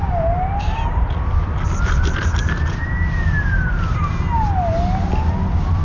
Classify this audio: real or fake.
real